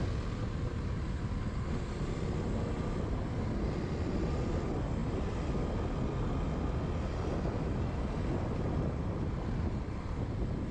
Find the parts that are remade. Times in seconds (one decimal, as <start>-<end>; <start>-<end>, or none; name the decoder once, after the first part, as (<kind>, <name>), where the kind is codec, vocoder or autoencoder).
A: 5.0-5.5 (vocoder, BigVGAN v2)